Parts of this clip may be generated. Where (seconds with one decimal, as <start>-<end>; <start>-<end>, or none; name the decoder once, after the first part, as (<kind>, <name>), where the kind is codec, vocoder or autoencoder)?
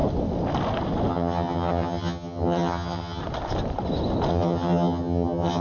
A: 1.1-3.2 (vocoder, HiFi-GAN); 4.3-5.6